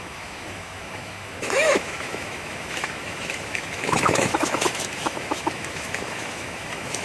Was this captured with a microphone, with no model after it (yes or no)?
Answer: no